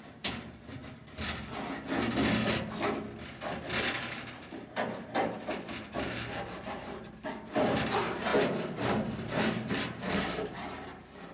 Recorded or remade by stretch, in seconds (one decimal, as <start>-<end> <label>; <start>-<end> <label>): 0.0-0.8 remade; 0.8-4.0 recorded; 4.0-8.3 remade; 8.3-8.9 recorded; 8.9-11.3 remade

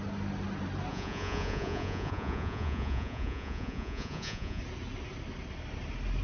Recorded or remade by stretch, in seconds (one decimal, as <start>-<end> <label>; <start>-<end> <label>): 0.0-0.9 recorded; 0.9-4.6 remade; 4.6-6.2 recorded

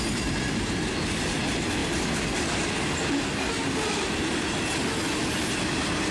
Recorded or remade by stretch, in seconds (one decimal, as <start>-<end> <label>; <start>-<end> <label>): 0.0-6.1 recorded

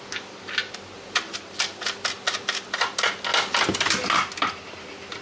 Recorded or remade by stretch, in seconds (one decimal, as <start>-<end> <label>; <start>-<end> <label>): 0.0-5.2 recorded

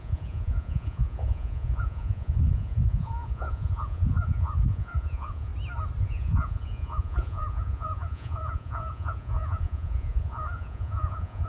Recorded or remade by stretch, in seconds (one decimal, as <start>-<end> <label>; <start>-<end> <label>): 0.0-5.5 remade; 5.5-6.0 recorded; 6.0-11.5 remade

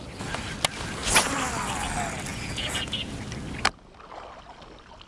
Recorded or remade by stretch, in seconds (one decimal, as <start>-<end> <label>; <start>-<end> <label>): 0.0-2.3 recorded; 2.3-3.1 remade; 3.1-5.1 recorded

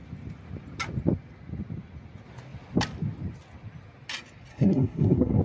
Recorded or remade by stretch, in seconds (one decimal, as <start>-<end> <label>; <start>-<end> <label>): 0.0-4.5 recorded; 4.5-5.4 remade

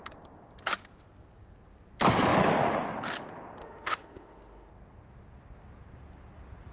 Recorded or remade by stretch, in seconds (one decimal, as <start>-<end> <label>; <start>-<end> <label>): 0.0-3.6 recorded; 3.6-4.7 remade; 4.7-6.7 recorded